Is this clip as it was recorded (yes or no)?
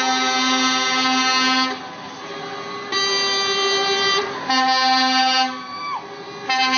yes